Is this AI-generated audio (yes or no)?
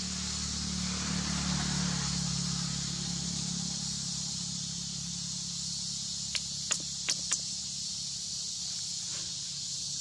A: no